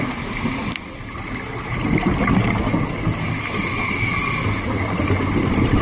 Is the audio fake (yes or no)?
no